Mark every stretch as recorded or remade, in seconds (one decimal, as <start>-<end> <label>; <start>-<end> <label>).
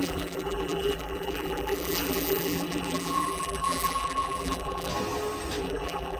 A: 0.0-4.9 remade; 4.9-5.6 recorded; 5.6-6.2 remade